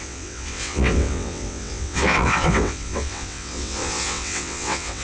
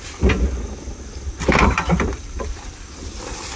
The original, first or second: second